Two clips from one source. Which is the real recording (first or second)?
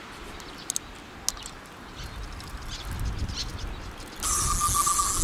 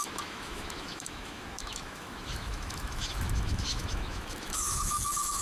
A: first